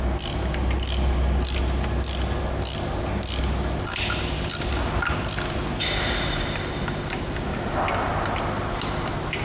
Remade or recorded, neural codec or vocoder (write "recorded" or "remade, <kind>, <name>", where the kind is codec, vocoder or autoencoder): recorded